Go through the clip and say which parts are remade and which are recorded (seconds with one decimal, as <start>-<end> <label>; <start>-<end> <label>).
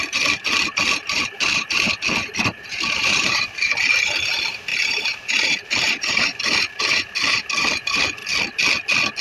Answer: 0.0-8.2 remade; 8.2-9.2 recorded